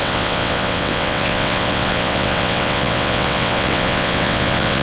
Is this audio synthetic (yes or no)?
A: yes